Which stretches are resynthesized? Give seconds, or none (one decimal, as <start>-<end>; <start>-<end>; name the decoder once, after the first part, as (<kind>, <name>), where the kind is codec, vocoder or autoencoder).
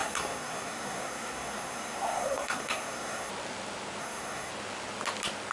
0.0-3.3 (codec, SNAC); 4.0-4.5